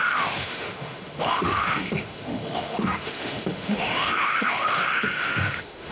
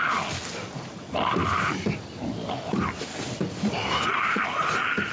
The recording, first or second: second